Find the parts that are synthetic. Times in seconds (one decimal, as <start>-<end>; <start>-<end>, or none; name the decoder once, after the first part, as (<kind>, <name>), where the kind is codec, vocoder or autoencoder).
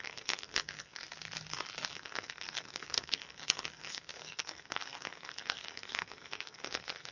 0.0-1.0 (codec, SNAC); 1.9-7.1